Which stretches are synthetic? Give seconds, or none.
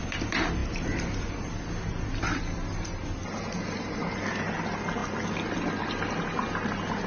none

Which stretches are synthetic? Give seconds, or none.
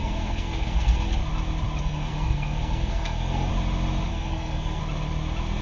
0.0-1.2 (codec, SNAC); 1.8-3.5; 4.1-4.8